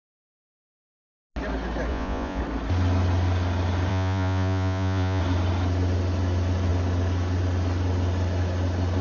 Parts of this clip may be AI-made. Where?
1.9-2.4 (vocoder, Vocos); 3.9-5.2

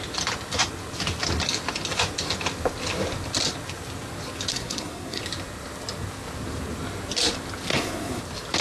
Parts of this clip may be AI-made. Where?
4.5-5.2 (codec, SNAC); 7.7-8.2

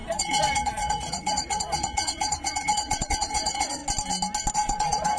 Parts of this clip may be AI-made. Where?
0.0-3.8 (vocoder, Vocos); 4.5-5.2

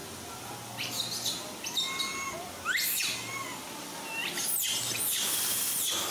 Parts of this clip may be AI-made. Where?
none

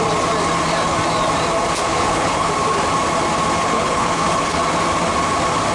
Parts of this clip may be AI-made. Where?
1.9-2.5 (codec, HILCodec); 3.6-4.6